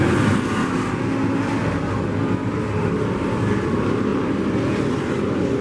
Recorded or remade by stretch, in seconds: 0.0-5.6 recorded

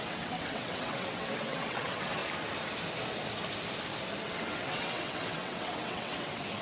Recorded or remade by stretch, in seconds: 0.0-2.2 remade; 2.2-4.2 recorded; 4.2-6.6 remade